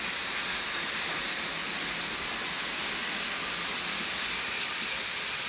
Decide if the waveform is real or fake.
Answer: real